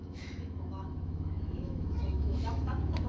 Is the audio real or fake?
fake